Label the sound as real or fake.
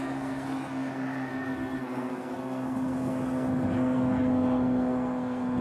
fake